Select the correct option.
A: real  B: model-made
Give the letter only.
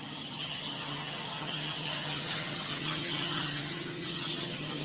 B